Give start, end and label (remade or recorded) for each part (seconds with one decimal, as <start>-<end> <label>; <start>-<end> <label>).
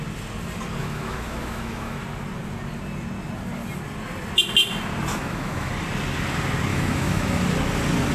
0.0-0.8 recorded; 0.8-2.0 remade; 2.0-5.1 recorded; 5.1-5.7 remade; 5.7-6.7 recorded; 6.7-7.4 remade; 7.4-8.1 recorded